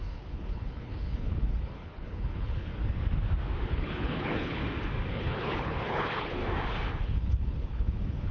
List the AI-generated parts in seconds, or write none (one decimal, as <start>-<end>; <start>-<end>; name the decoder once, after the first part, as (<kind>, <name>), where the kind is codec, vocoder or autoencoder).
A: 0.0-2.7 (codec, HILCodec); 3.7-4.6; 5.1-6.4; 7.0-8.3